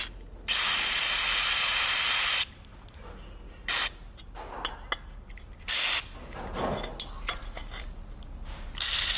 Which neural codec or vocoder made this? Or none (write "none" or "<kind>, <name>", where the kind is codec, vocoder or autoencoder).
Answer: none